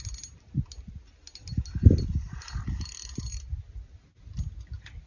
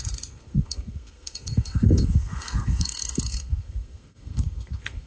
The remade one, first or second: second